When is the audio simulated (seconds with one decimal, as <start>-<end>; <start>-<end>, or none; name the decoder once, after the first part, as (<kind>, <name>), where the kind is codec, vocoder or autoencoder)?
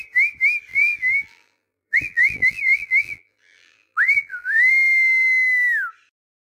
0.7-4.7 (vocoder, BigVGAN v2)